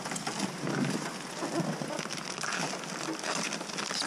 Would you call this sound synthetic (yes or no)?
no